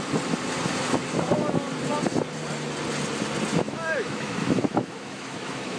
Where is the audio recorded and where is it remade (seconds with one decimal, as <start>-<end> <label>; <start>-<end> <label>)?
0.0-3.5 recorded; 3.5-5.8 remade